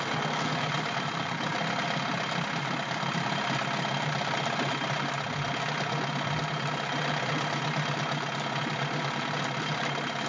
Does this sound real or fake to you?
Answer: real